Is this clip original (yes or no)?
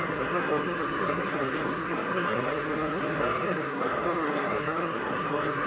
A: no